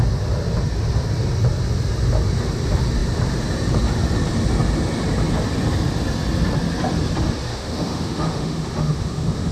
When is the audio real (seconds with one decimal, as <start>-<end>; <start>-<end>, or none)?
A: 0.0-7.5